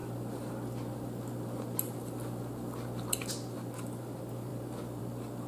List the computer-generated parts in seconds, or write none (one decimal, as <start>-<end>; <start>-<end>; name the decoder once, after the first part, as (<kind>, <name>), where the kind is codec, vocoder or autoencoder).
none

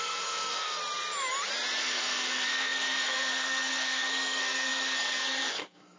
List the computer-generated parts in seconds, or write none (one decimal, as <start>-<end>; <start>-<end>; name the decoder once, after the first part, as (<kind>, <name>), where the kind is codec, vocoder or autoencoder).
0.0-0.8 (codec, SNAC); 1.8-6.0